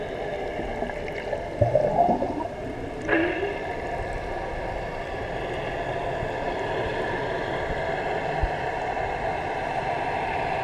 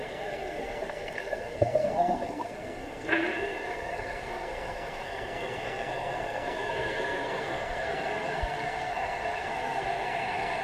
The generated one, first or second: second